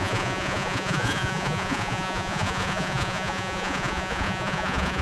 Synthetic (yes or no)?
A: yes